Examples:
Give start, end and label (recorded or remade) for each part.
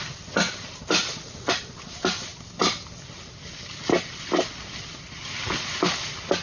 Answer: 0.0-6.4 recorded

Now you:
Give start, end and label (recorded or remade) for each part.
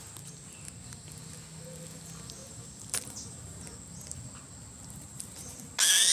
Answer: 0.0-2.4 recorded; 2.4-3.6 remade; 3.6-6.1 recorded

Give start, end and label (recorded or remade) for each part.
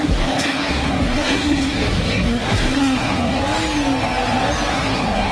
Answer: 0.0-3.4 remade; 3.4-4.7 recorded; 4.7-5.3 remade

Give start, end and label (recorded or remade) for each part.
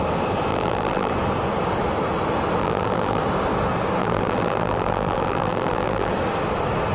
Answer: 0.0-0.5 recorded; 0.5-1.1 remade; 1.1-2.6 recorded; 2.6-3.2 remade; 3.2-4.0 recorded; 4.0-6.1 remade; 6.1-6.9 recorded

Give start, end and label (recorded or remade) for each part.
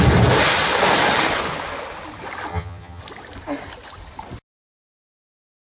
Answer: 0.0-2.5 recorded; 2.5-3.0 remade; 3.0-5.7 recorded